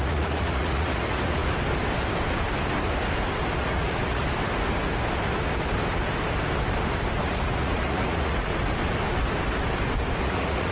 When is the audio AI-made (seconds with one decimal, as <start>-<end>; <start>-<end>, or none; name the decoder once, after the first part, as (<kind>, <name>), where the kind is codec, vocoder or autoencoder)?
0.0-1.4 (vocoder, Vocos); 3.6-4.2; 7.2-8.5; 10.2-10.7